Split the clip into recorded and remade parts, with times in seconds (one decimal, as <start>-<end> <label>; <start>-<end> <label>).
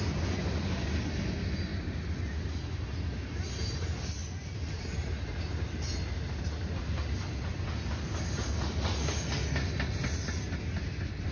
0.0-11.3 recorded